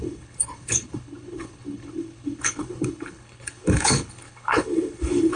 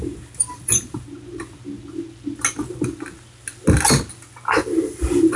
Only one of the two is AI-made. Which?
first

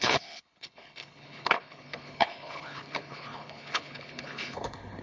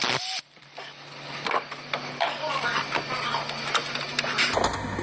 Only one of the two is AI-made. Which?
first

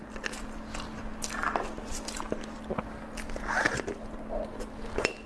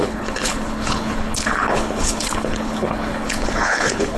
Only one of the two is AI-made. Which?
second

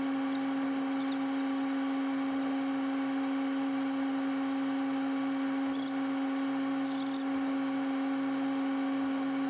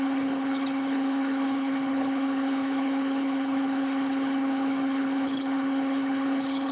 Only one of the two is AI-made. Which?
second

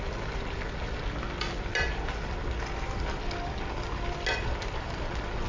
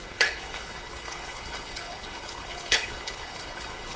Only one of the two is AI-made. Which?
second